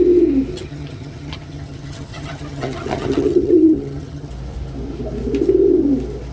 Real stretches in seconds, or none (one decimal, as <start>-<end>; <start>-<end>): 0.0-0.5; 4.3-6.3